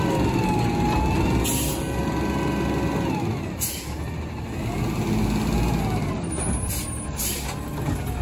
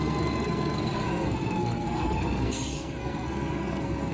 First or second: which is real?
first